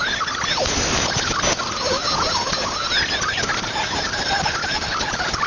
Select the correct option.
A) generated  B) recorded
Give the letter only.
B